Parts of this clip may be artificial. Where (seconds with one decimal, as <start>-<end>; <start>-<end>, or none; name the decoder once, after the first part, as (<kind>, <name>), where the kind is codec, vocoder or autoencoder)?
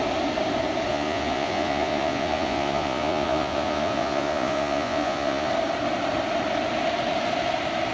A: 0.9-5.5 (vocoder, Vocos)